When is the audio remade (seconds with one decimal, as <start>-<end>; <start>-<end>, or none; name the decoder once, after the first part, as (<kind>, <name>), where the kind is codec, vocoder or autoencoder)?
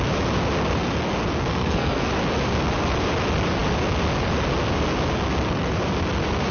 1.5-2.1 (codec, SNAC)